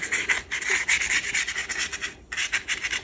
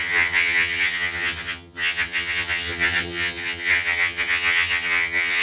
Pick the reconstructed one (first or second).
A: second